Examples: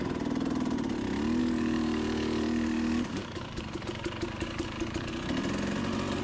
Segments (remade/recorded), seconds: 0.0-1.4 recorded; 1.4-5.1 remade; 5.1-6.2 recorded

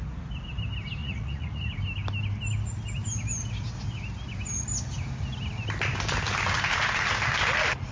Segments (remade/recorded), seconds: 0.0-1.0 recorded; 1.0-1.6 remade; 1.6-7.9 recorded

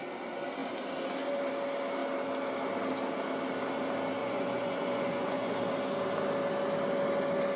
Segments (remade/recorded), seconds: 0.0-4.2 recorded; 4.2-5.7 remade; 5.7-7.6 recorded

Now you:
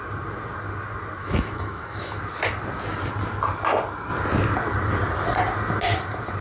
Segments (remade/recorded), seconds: 0.0-1.2 recorded; 1.2-2.2 remade; 2.2-6.4 recorded

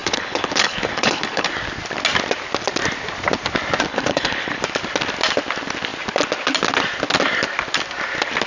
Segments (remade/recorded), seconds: 0.0-1.5 remade; 1.5-3.9 recorded; 3.9-4.6 remade; 4.6-8.5 recorded

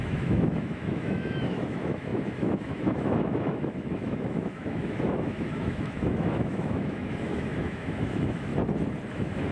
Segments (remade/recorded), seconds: 0.0-8.5 remade; 8.5-9.1 recorded; 9.1-9.5 remade

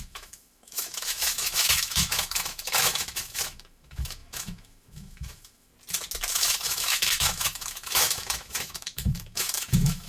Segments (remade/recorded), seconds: 0.0-5.7 remade; 5.7-6.3 recorded; 6.3-10.1 remade